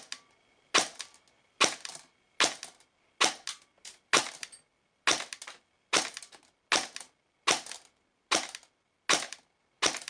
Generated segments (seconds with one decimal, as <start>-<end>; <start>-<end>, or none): none